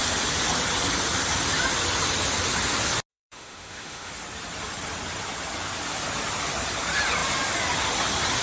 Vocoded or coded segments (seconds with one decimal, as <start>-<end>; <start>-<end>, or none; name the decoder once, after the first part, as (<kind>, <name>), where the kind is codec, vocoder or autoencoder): 3.1-4.1 (autoencoder, DAC-VAE)